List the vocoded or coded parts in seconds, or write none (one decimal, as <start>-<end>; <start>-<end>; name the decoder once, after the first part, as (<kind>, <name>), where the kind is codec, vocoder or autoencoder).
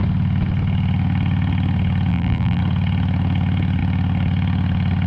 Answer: 2.1-2.6 (vocoder, BigVGAN v2)